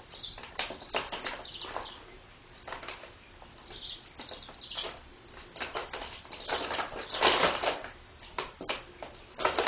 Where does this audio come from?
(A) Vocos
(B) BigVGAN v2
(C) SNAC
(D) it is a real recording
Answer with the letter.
B